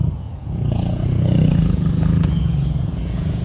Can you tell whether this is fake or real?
fake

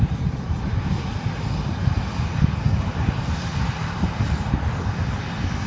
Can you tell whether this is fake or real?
real